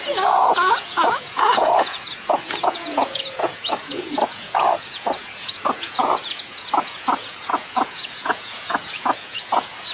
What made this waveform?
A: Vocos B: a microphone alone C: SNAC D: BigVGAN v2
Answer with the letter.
A